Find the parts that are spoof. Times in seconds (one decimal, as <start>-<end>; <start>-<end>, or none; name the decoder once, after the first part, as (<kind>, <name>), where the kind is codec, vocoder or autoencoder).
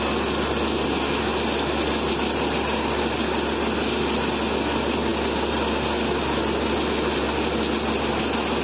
none